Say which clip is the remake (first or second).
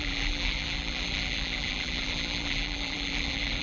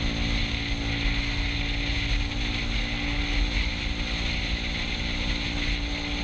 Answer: first